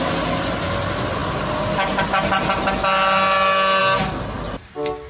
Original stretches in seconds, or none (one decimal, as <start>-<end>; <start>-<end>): 0.0-5.1